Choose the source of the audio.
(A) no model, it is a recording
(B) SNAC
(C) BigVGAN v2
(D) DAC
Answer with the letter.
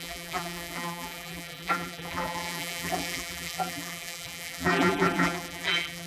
C